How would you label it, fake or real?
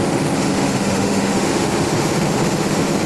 fake